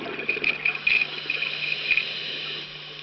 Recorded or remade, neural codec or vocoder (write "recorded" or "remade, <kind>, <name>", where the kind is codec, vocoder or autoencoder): recorded